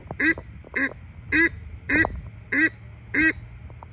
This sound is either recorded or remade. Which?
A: recorded